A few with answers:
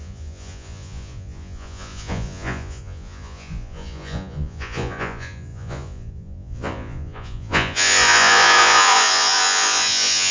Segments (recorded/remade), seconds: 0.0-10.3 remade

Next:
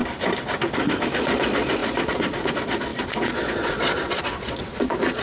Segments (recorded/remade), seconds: 0.0-1.2 recorded; 1.2-5.2 remade

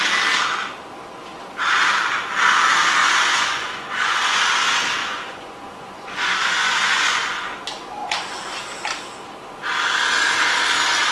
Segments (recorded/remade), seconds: 0.0-3.0 recorded; 3.0-4.4 remade; 4.4-5.0 recorded; 5.0-7.4 remade; 7.4-8.0 recorded; 8.0-8.6 remade; 8.6-11.1 recorded

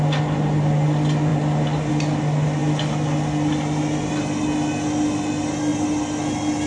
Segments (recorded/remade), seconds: 0.0-6.7 recorded

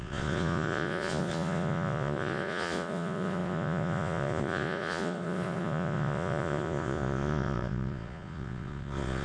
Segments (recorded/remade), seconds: 0.0-9.2 remade